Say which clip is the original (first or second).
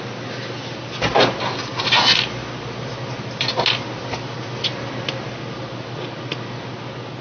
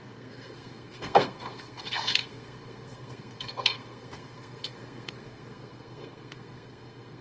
first